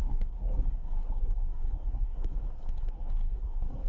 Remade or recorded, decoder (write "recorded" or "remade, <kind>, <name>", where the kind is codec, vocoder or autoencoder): remade, codec, SNAC